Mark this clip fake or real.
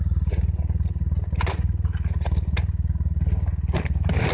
real